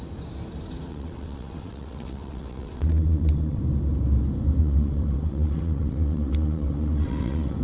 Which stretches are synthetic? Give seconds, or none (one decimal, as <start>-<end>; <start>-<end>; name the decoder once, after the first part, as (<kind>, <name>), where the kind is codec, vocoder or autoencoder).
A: 0.9-3.6 (vocoder, WaveNeXt); 4.6-7.6